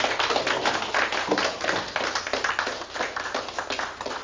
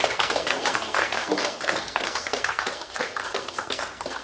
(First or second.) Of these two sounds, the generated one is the second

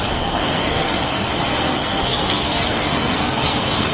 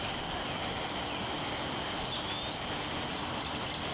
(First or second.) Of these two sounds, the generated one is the first